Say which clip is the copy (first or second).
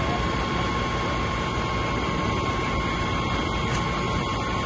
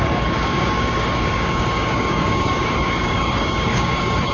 second